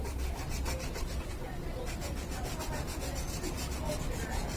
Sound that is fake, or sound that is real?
real